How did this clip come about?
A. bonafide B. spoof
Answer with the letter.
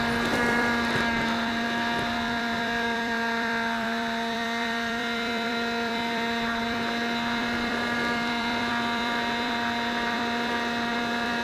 B